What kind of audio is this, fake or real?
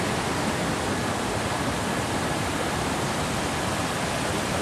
real